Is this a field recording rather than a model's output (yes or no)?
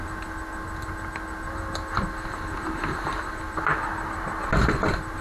yes